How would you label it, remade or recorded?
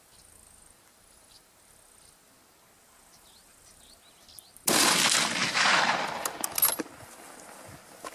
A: recorded